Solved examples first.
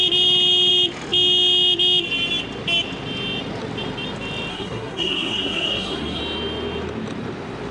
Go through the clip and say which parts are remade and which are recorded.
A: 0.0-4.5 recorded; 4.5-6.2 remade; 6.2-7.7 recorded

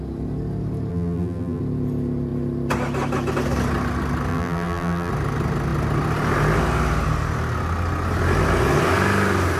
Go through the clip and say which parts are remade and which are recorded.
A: 0.0-0.9 recorded; 0.9-1.6 remade; 1.6-4.3 recorded; 4.3-5.1 remade; 5.1-9.6 recorded

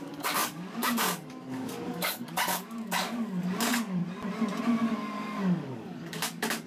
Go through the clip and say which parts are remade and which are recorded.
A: 0.0-4.0 remade; 4.0-4.6 recorded; 4.6-6.7 remade

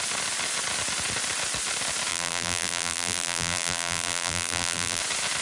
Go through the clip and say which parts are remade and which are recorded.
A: 0.0-2.1 recorded; 2.1-5.0 remade; 5.0-5.4 recorded

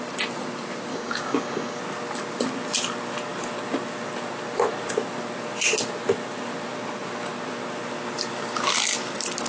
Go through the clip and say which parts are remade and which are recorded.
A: 0.0-0.9 recorded; 0.9-1.8 remade; 1.8-9.5 recorded

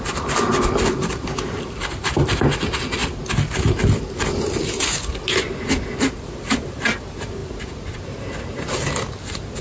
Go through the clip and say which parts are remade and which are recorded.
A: 0.0-9.6 recorded

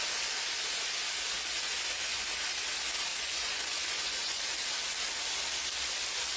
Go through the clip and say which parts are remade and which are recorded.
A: 0.0-3.1 recorded; 3.1-4.4 remade; 4.4-6.4 recorded